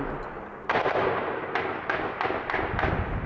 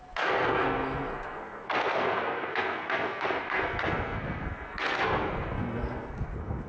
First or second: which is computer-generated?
second